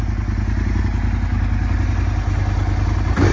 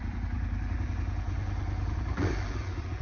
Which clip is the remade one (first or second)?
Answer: second